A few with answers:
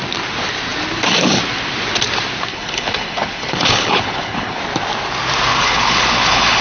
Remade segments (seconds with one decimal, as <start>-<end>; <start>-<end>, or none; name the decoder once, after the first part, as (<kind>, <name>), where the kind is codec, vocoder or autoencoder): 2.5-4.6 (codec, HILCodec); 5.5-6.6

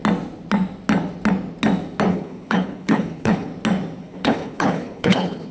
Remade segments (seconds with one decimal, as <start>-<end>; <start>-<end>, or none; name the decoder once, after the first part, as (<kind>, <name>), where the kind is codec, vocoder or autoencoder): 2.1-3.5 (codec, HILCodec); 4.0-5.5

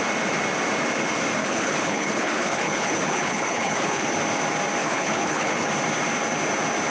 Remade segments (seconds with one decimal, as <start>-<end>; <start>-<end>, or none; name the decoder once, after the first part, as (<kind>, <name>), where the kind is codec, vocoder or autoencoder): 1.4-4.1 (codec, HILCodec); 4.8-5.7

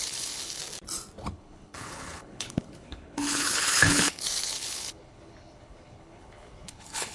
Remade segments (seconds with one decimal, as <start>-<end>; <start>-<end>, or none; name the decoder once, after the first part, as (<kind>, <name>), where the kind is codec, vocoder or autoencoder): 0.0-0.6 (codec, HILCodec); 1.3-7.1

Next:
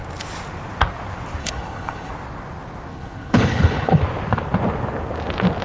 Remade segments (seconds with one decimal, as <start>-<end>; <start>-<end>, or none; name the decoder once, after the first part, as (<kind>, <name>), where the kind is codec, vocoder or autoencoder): 1.4-2.1 (codec, HILCodec); 2.9-4.0